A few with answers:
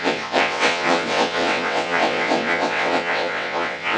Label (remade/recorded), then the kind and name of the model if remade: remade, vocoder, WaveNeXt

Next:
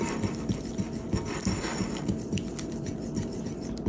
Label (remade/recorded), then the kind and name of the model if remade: recorded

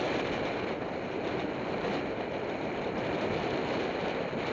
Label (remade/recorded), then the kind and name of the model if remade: recorded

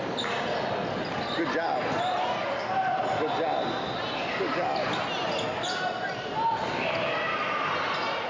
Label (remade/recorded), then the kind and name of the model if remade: recorded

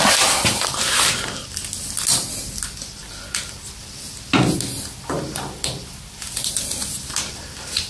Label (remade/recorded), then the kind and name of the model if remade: recorded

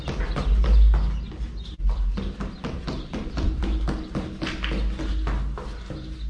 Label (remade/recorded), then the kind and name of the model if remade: recorded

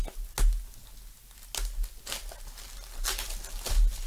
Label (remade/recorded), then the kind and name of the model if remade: recorded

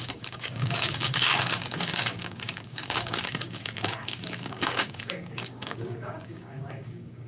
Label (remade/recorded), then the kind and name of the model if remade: remade, codec, DAC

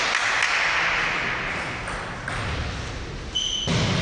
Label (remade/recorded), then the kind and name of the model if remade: recorded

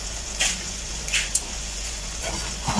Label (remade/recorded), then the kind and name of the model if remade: remade, vocoder, Vocos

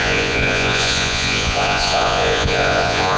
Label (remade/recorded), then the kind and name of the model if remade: remade, vocoder, Vocos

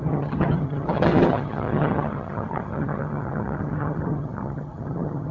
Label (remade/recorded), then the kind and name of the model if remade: remade, vocoder, HiFi-GAN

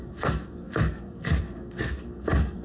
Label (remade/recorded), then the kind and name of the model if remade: remade, codec, SNAC